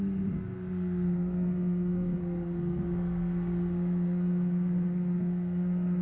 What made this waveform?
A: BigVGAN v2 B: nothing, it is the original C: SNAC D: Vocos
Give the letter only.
C